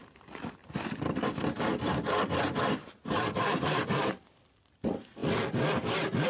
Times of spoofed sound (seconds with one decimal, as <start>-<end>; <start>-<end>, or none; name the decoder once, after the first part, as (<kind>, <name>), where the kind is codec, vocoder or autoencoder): 0.6-4.4 (vocoder, BigVGAN v2)